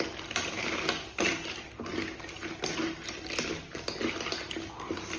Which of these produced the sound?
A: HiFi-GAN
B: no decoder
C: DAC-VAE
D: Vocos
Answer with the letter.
B